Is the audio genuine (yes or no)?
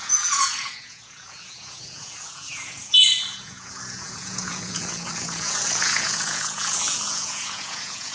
no